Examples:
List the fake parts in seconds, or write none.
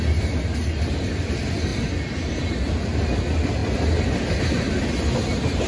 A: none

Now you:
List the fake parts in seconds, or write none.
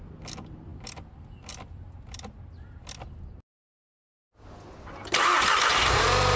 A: 5.7-6.4 (vocoder, BigVGAN v2)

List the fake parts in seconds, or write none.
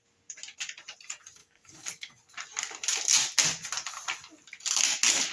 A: 1.4-2.2 (codec, DAC)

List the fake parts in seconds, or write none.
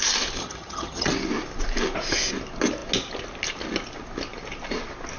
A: 0.4-1.1 (vocoder, HiFi-GAN)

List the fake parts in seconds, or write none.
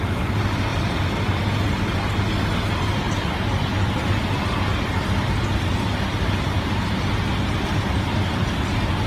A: 0.7-1.3 (vocoder, BigVGAN v2)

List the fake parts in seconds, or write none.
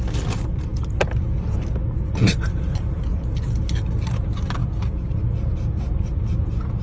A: none